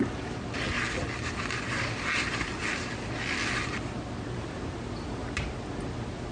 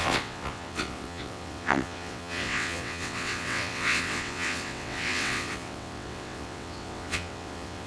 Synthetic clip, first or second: second